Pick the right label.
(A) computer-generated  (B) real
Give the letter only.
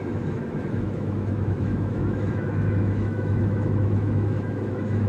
A